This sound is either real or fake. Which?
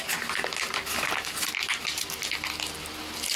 real